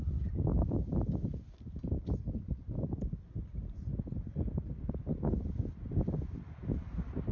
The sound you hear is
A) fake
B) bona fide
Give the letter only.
B